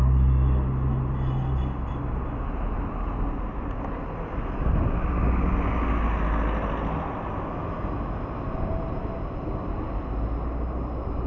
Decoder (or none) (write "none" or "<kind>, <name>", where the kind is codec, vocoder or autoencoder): none